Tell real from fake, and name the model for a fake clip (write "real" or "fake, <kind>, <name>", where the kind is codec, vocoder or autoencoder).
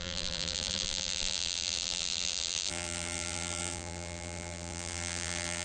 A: fake, vocoder, BigVGAN v2